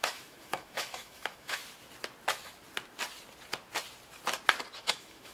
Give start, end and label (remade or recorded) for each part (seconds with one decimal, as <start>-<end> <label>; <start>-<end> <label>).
0.0-1.6 remade; 1.6-4.8 recorded; 4.8-5.3 remade